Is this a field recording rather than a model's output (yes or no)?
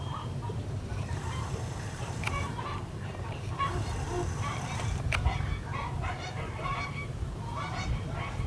no